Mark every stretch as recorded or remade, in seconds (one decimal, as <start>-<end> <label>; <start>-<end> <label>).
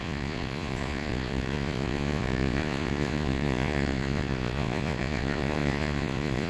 0.0-6.5 remade